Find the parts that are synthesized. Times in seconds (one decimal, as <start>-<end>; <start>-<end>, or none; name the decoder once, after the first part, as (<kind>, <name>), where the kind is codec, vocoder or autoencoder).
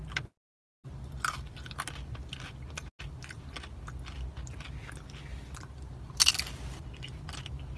none